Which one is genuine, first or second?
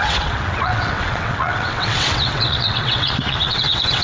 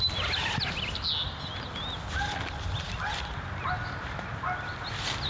second